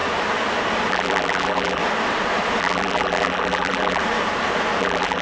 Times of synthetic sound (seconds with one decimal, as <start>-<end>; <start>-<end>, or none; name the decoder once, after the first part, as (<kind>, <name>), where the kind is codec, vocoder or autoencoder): 0.9-1.8 (vocoder, BigVGAN v2); 2.6-4.0; 4.8-5.2